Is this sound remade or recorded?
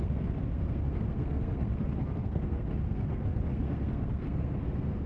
remade